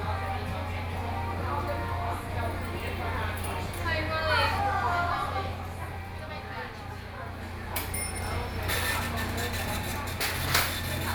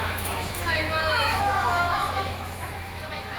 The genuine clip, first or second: first